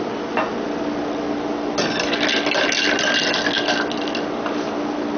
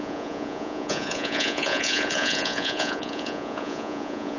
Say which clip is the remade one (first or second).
second